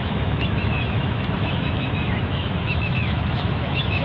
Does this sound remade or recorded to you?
remade